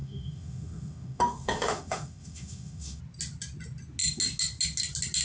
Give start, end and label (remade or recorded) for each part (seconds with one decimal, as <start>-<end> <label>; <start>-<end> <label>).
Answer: 0.0-3.0 remade; 3.0-5.2 recorded